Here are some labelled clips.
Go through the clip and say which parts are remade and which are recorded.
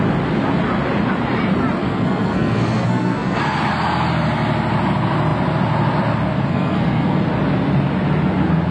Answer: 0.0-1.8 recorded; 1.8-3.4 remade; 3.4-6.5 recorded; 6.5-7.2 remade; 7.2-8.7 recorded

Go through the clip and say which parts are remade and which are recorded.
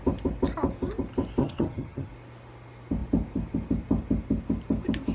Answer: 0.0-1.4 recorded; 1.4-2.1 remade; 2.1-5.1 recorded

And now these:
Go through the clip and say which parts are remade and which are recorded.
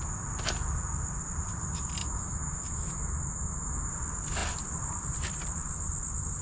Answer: 0.0-2.0 recorded; 2.0-3.9 remade; 3.9-6.4 recorded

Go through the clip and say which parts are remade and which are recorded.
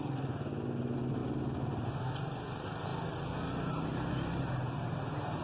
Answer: 0.0-5.4 recorded